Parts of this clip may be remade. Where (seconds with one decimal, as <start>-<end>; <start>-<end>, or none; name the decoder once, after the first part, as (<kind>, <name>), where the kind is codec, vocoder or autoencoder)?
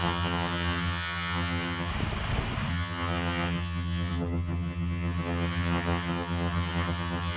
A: 0.0-1.9 (vocoder, HiFi-GAN); 2.7-7.4